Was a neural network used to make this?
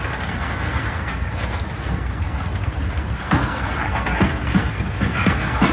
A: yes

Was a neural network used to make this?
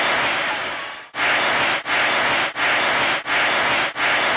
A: no